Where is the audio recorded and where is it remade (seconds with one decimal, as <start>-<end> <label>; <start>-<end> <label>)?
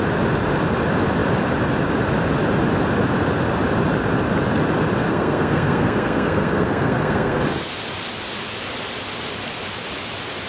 0.0-5.1 recorded; 5.1-7.4 remade; 7.4-10.5 recorded